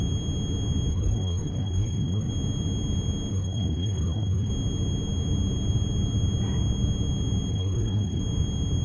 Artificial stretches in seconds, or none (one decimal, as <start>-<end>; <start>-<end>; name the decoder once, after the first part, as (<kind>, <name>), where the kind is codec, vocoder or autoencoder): 0.9-2.3 (codec, SNAC); 3.3-4.5; 7.5-8.2